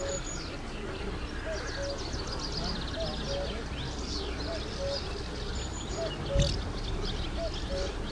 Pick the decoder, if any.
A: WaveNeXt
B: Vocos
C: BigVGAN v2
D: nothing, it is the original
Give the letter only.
D